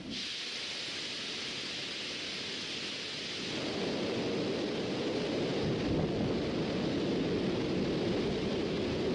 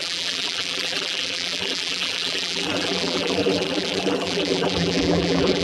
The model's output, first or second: second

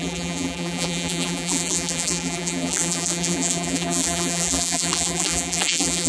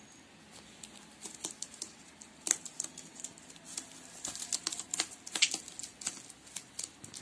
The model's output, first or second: first